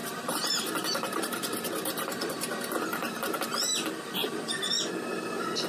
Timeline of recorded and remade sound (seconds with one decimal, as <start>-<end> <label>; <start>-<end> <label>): 0.0-3.4 remade; 3.4-4.2 recorded; 4.2-4.7 remade; 4.7-5.7 recorded